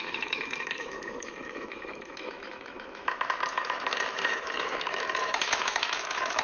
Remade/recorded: remade